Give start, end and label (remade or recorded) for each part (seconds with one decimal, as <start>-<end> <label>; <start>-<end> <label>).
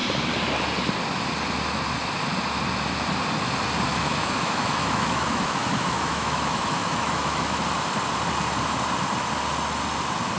0.0-3.9 recorded; 3.9-7.6 remade; 7.6-10.4 recorded